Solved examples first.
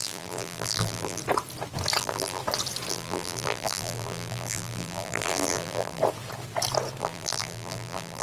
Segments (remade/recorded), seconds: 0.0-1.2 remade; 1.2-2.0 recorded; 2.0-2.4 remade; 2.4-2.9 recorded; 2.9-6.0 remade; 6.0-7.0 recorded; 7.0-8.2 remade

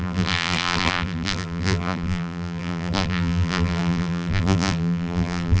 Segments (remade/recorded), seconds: 0.0-5.6 remade

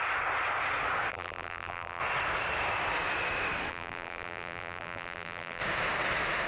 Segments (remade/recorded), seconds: 0.0-1.1 recorded; 1.1-2.0 remade; 2.0-3.7 recorded; 3.7-5.6 remade; 5.6-6.5 recorded

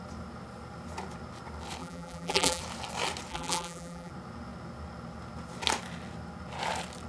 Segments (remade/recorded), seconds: 0.0-1.8 recorded; 1.8-2.6 remade; 2.6-3.3 recorded; 3.3-4.1 remade; 4.1-7.1 recorded

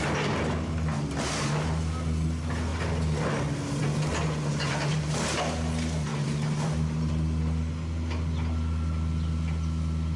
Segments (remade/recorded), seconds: 0.0-6.1 recorded; 6.1-7.1 remade; 7.1-10.2 recorded

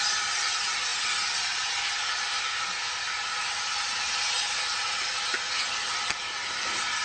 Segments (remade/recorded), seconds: 0.0-7.0 recorded

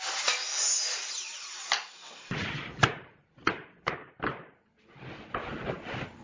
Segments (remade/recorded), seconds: 0.0-2.4 recorded; 2.4-3.7 remade; 3.7-6.2 recorded